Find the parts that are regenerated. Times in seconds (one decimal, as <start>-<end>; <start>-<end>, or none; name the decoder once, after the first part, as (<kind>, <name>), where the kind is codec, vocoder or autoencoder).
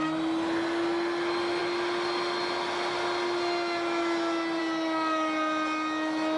none